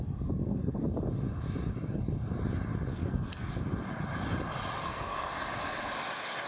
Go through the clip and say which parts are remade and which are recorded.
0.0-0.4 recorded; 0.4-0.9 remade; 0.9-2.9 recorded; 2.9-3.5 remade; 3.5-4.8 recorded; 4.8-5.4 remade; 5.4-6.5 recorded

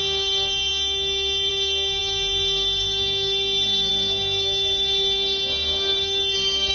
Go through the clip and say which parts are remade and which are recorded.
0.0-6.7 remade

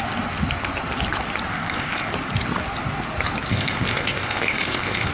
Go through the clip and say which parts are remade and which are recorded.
0.0-1.5 recorded; 1.5-2.1 remade; 2.1-3.5 recorded; 3.5-5.1 remade

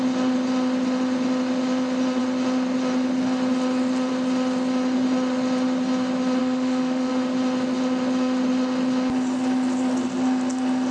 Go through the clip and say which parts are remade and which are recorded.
0.0-6.4 recorded; 6.4-7.1 remade; 7.1-10.9 recorded

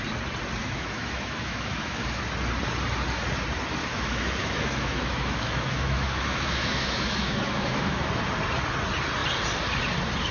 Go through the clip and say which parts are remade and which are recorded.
0.0-0.6 recorded; 0.6-2.2 remade; 2.2-3.8 recorded; 3.8-8.1 remade; 8.1-10.3 recorded